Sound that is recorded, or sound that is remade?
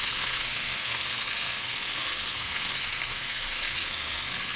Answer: remade